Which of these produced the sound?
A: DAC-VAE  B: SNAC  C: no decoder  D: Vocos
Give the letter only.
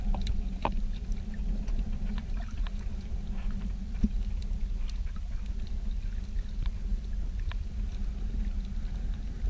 C